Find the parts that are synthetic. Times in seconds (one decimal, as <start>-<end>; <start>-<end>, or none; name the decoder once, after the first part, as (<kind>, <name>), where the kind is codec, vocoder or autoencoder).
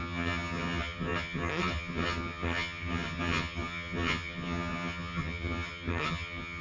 0.0-6.6 (vocoder, HiFi-GAN)